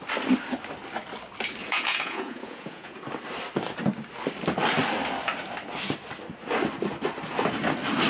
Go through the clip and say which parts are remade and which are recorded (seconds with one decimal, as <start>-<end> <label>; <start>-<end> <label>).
0.0-1.6 recorded; 1.6-3.0 remade; 3.0-8.1 recorded